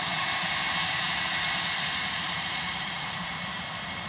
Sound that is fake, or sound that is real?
fake